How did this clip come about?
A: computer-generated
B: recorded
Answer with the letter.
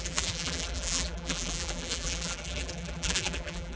A